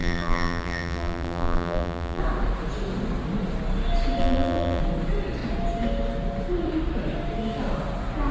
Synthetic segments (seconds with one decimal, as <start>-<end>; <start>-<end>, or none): 0.0-2.2; 4.2-4.8